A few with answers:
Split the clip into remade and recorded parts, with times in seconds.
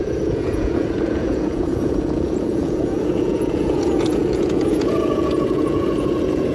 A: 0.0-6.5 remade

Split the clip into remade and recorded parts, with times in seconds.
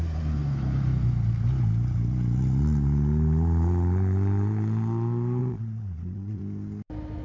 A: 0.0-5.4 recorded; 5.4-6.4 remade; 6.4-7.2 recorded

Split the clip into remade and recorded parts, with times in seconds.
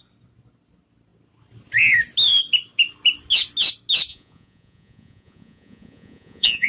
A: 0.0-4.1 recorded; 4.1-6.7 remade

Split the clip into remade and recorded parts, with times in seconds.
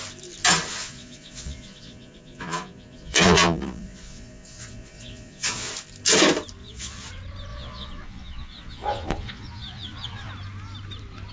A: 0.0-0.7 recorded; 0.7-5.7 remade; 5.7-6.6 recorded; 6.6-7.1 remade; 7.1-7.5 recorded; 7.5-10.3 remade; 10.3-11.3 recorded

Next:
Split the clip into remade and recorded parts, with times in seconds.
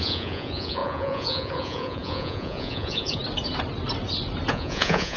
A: 0.0-3.2 remade; 3.2-4.5 recorded; 4.5-5.2 remade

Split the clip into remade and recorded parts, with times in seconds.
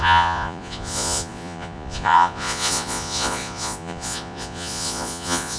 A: 0.0-5.6 remade